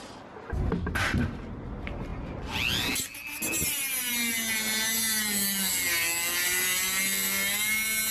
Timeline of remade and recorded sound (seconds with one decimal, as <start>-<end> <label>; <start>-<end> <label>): 0.0-8.1 recorded